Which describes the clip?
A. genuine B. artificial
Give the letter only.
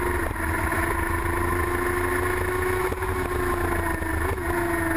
A